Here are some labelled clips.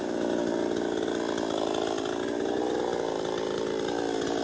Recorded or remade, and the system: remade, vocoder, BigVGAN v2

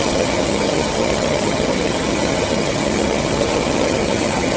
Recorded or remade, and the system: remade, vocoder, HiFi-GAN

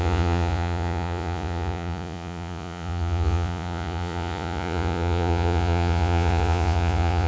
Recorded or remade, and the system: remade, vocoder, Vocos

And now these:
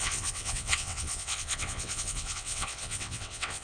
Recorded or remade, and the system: remade, vocoder, WaveNeXt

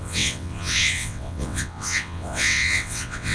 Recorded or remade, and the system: remade, vocoder, WaveNeXt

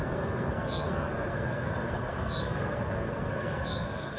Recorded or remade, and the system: remade, codec, SNAC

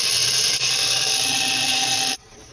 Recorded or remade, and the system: remade, vocoder, WaveNeXt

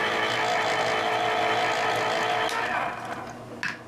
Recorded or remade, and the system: recorded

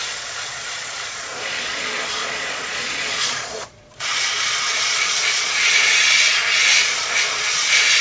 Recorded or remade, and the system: remade, vocoder, Vocos